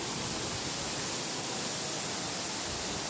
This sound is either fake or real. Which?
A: real